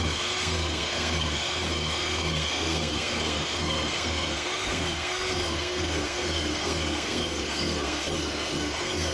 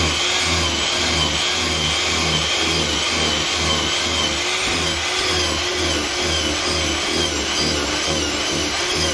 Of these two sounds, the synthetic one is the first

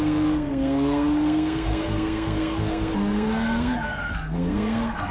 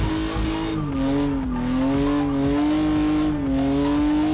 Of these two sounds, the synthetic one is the first